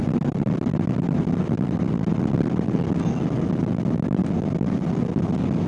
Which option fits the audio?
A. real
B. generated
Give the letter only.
A